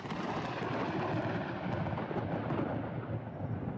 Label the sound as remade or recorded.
recorded